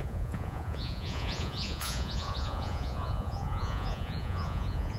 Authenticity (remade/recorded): remade